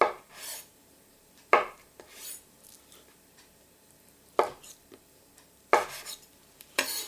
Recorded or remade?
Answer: recorded